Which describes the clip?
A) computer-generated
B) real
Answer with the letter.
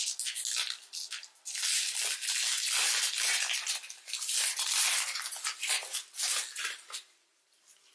B